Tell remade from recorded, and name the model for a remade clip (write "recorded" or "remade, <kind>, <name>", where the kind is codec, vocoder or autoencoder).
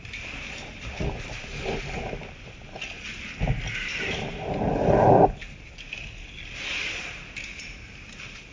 recorded